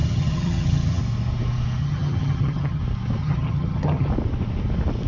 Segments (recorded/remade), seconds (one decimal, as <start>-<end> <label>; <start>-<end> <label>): 0.0-1.0 remade; 1.0-1.8 recorded; 1.8-2.8 remade; 2.8-3.2 recorded; 3.2-4.1 remade; 4.1-5.1 recorded